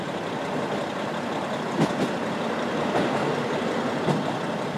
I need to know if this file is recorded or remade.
remade